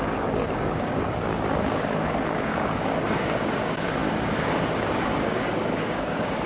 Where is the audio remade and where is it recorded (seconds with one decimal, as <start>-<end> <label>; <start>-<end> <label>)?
0.0-6.5 remade